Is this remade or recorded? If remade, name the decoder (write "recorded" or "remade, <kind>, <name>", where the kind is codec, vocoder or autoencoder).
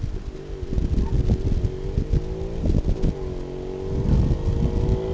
recorded